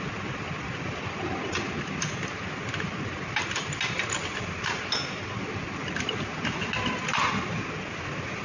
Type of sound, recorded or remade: recorded